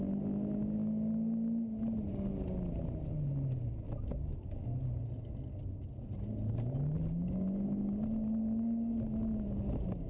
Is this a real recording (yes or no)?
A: yes